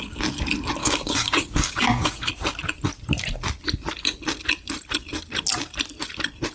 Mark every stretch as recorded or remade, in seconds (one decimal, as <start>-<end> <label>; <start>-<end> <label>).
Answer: 0.0-0.8 recorded; 0.8-2.3 remade; 2.3-6.5 recorded